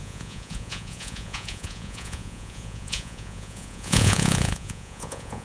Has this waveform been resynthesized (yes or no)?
yes